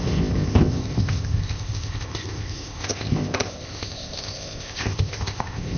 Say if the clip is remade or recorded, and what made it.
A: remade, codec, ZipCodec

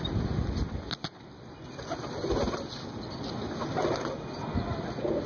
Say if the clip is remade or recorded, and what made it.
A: recorded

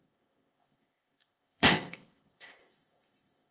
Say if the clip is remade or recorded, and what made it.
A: remade, codec, ZipCodec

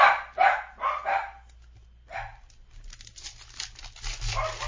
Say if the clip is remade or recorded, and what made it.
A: recorded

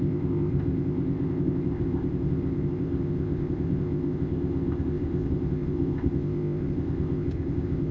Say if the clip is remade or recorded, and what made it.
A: remade, codec, ZipCodec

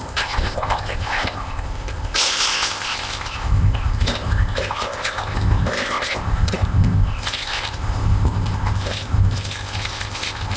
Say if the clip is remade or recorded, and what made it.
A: remade, codec, ZipCodec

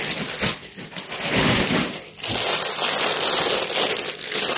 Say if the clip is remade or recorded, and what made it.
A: recorded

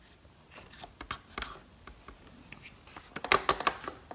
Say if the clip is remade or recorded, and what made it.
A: recorded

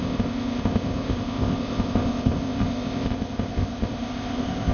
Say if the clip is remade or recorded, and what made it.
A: remade, codec, ZipCodec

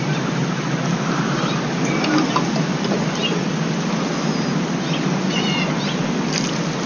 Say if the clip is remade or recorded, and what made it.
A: recorded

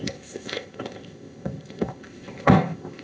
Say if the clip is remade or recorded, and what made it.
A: remade, codec, ZipCodec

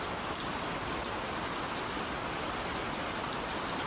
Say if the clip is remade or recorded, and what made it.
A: recorded